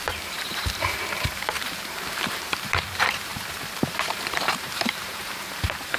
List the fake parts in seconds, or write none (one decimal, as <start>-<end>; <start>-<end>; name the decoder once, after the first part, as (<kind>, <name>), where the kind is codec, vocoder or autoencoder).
0.0-6.0 (vocoder, BigVGAN v2)